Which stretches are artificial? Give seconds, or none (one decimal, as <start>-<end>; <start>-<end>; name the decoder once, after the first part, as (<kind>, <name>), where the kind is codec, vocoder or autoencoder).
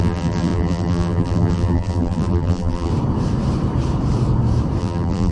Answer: 0.0-2.9 (vocoder, BigVGAN v2); 4.8-5.3